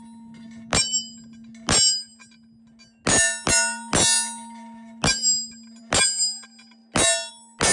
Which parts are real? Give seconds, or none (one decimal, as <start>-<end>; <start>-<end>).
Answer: 0.0-7.7